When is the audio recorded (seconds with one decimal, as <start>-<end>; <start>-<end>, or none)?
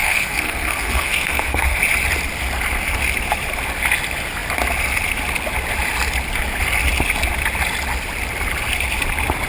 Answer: 1.8-9.5